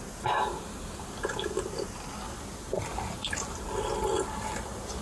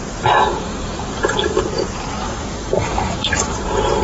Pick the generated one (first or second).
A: second